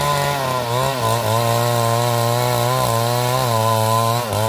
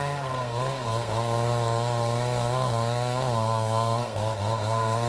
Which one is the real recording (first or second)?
first